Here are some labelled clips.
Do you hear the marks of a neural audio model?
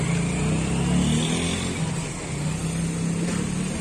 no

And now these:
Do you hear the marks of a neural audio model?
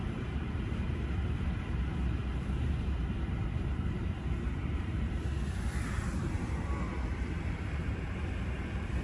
yes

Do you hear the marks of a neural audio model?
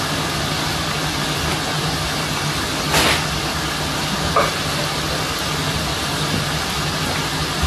no